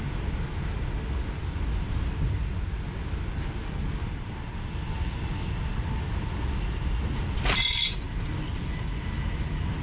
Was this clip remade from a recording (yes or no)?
no